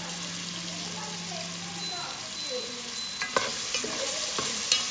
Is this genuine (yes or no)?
yes